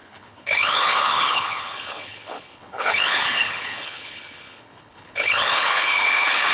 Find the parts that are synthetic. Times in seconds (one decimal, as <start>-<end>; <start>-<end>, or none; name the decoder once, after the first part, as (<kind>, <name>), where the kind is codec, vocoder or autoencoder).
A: 0.0-6.5 (codec, HILCodec)